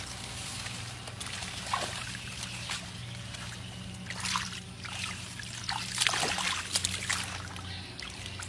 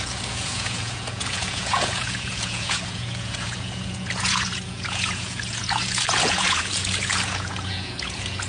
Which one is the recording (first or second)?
first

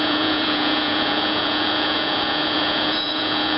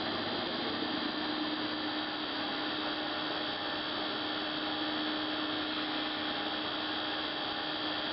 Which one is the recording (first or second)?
second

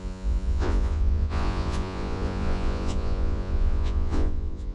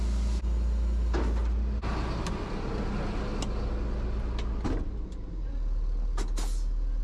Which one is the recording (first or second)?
second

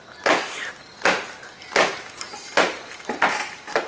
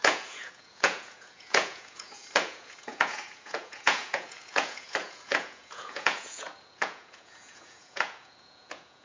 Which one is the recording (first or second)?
first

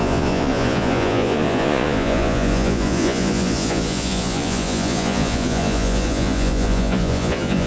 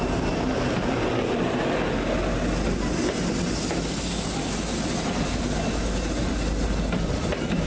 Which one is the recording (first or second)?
second